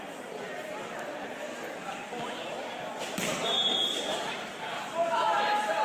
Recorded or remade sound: remade